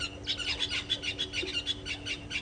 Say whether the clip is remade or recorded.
recorded